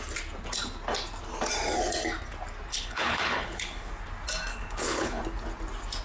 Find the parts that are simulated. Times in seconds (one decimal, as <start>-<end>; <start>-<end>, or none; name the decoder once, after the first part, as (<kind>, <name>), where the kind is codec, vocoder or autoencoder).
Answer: 2.7-3.9 (codec, HILCodec); 4.5-5.2